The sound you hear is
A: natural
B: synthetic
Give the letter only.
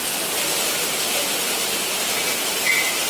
A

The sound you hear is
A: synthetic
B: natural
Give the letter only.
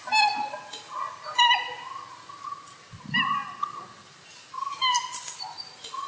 B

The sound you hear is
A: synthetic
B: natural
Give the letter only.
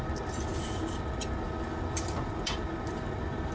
B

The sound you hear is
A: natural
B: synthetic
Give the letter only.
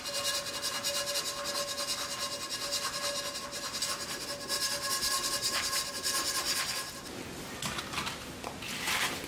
A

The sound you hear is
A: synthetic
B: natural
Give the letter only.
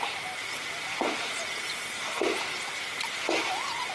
B